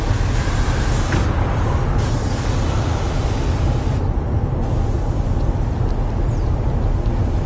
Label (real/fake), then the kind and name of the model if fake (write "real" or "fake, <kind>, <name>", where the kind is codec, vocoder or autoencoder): real